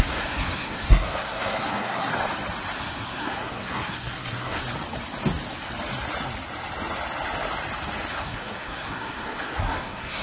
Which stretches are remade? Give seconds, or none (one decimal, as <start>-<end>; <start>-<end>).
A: 0.0-2.1; 2.8-4.6; 8.1-10.2